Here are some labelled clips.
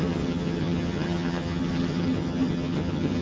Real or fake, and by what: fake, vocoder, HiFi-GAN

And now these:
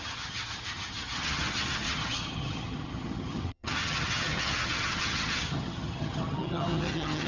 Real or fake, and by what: fake, vocoder, HiFi-GAN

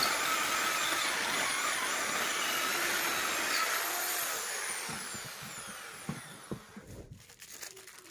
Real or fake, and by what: real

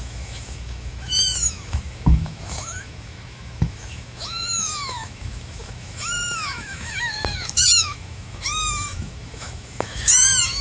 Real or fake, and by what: fake, autoencoder, DAC-VAE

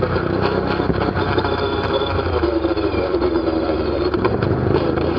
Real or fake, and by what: fake, vocoder, BigVGAN v2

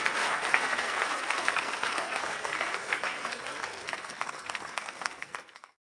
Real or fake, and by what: fake, codec, SNAC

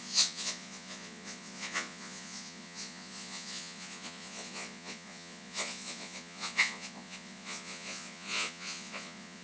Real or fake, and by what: fake, vocoder, Vocos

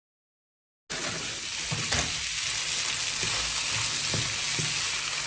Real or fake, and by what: real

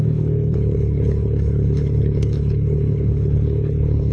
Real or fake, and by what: fake, codec, HILCodec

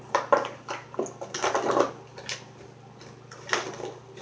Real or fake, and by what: real